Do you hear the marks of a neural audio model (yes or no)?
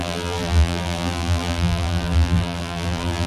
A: yes